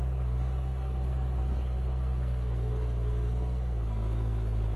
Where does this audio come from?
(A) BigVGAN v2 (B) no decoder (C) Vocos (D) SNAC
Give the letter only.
D